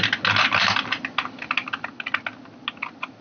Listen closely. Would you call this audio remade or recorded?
recorded